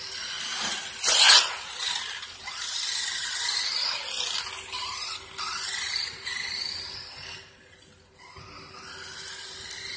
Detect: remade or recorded recorded